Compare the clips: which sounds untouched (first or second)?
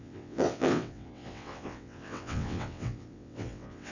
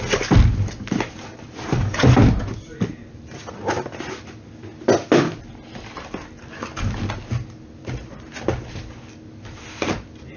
second